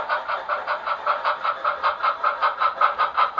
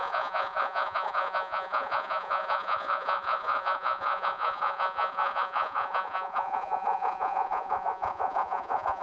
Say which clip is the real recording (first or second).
first